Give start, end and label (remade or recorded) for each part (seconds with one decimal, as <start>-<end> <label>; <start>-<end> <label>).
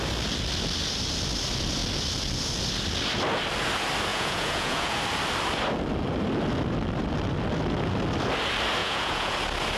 0.0-4.1 recorded; 4.1-5.0 remade; 5.0-8.8 recorded; 8.8-9.3 remade; 9.3-9.8 recorded